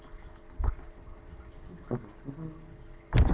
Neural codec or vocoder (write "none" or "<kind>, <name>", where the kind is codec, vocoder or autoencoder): none